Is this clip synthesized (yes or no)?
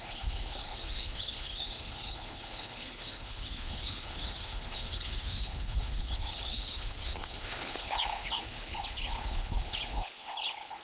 yes